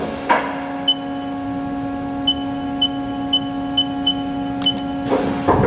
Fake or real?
real